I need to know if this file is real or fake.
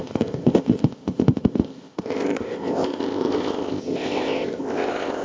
fake